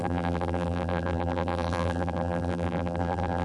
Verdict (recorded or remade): remade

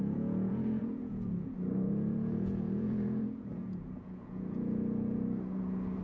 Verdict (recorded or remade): remade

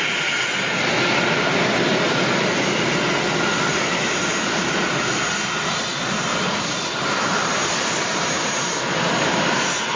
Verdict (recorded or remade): recorded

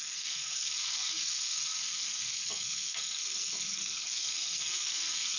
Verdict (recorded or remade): remade